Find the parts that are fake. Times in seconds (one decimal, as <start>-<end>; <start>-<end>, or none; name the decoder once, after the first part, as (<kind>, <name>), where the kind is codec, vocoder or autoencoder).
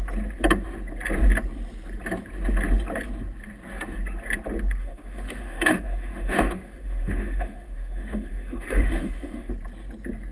4.8-9.5 (autoencoder, DAC-VAE)